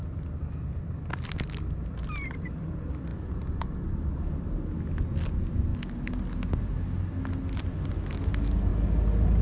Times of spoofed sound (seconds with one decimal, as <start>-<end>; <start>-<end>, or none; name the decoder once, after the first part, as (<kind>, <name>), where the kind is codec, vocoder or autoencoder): none